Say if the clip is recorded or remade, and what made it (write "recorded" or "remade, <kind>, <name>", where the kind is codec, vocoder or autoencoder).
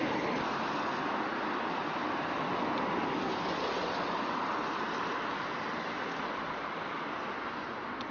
recorded